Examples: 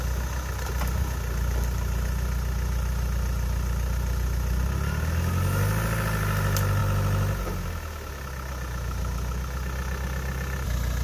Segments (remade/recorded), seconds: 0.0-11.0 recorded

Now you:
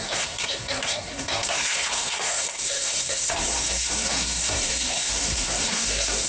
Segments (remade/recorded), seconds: 0.0-6.3 remade